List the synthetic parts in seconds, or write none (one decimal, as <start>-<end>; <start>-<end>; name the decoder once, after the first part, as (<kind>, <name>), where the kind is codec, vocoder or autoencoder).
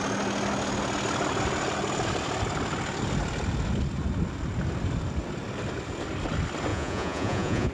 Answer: 6.7-7.7 (vocoder, Vocos)